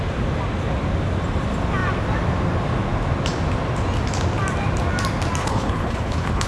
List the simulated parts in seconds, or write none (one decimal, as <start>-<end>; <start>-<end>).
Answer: 5.4-6.5